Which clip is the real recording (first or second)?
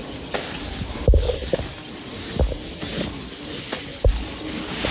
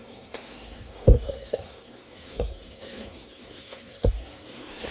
first